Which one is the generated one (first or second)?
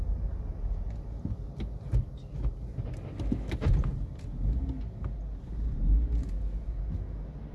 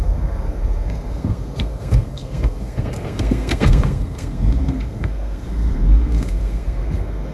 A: second